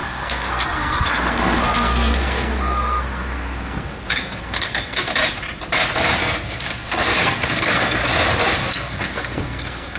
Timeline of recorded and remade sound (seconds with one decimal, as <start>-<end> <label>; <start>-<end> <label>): 0.0-5.1 remade; 5.1-6.2 recorded; 6.2-8.0 remade; 8.0-8.7 recorded; 8.7-10.0 remade